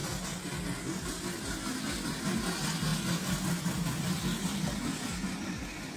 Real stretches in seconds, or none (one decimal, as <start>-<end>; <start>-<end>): 0.0-6.0

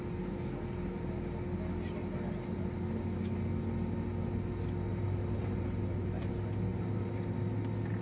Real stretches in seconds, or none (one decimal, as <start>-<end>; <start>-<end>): 0.0-4.9; 6.3-6.7; 7.4-8.0

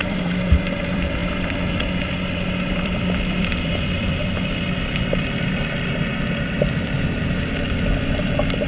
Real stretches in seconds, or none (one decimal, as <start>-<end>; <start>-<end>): 1.2-2.7

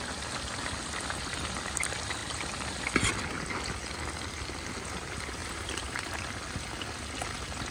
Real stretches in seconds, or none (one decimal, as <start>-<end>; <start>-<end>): 0.0-5.4; 6.2-7.7

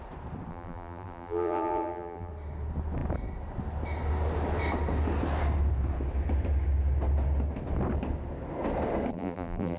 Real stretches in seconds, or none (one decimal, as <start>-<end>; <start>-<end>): 0.0-0.5; 2.3-9.1

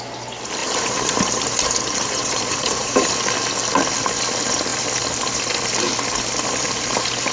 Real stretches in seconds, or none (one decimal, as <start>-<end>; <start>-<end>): 0.0-0.6; 3.1-7.3

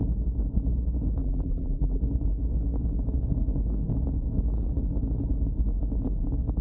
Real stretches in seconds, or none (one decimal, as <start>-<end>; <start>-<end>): 0.0-1.2; 2.0-6.6

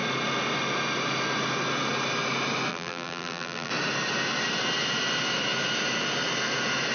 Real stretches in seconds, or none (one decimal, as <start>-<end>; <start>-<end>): 0.0-2.7; 3.7-6.9